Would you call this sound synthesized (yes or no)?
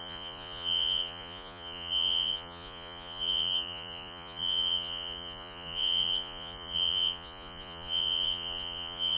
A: yes